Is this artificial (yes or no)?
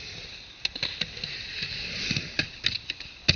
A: no